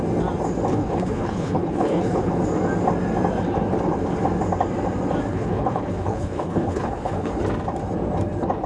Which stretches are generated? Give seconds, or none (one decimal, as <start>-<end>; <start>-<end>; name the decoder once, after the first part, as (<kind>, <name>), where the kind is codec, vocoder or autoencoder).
0.7-2.3 (codec, HILCodec); 5.3-7.3